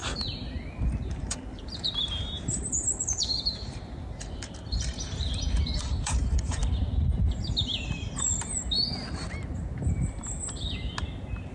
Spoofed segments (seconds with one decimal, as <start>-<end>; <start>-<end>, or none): 1.1-6.6